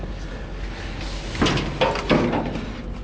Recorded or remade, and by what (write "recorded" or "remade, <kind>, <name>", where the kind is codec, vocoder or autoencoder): recorded